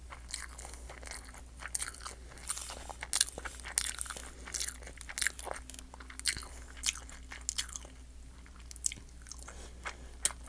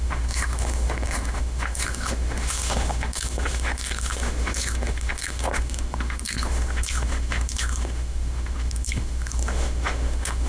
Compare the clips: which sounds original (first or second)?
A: first